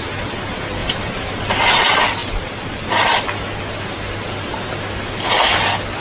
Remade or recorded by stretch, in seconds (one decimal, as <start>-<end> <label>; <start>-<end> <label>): 0.0-0.8 recorded; 0.8-1.8 remade; 1.8-2.2 recorded; 2.2-2.9 remade; 2.9-6.0 recorded